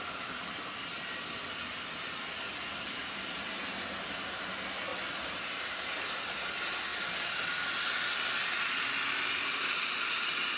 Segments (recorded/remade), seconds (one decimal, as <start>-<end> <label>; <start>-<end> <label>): 0.0-10.6 recorded